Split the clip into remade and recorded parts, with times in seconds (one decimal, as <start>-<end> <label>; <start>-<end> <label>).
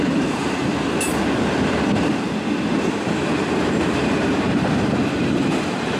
0.0-0.7 remade; 0.7-3.2 recorded; 3.2-6.0 remade